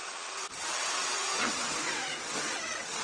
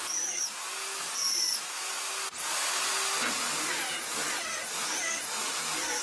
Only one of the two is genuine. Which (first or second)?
second